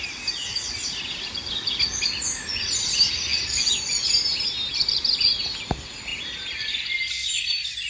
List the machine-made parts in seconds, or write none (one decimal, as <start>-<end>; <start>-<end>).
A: none